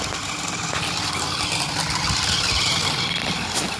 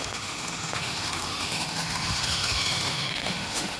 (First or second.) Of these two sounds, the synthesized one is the second